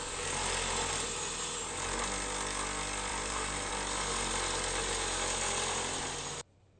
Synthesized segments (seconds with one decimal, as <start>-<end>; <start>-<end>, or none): 3.1-3.7